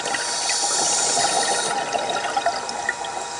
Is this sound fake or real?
real